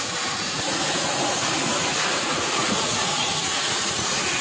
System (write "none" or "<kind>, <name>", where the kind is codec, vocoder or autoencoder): vocoder, Vocos